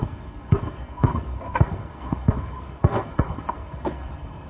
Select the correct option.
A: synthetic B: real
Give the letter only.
A